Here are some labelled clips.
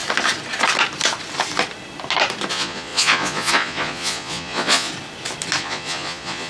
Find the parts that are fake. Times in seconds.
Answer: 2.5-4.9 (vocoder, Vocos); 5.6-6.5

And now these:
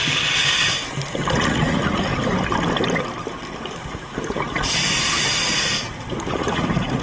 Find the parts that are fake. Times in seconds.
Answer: 1.3-2.1 (vocoder, Vocos); 6.3-7.0

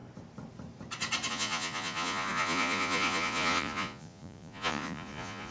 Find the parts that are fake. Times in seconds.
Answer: 1.3-5.5 (vocoder, Vocos)

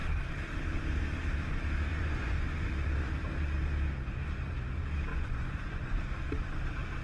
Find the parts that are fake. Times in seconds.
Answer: 1.9-2.7 (vocoder, Vocos); 5.1-5.9